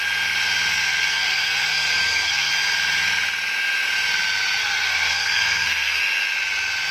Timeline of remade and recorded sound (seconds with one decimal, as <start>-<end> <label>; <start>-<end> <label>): 0.0-0.7 recorded; 0.7-2.5 remade; 2.5-4.6 recorded; 4.6-6.0 remade; 6.0-6.9 recorded